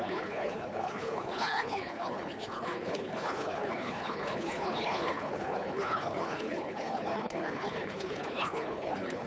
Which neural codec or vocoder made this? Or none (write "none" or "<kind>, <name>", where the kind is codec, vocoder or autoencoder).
codec, HILCodec